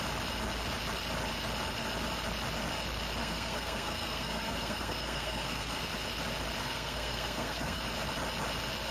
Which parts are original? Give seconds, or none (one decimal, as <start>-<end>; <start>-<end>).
0.0-3.2; 5.8-6.6; 7.8-8.9

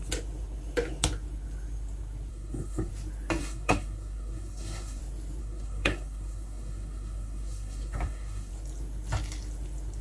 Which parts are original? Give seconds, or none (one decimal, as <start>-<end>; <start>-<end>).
0.0-2.3; 2.9-3.4; 5.0-5.4; 8.5-10.0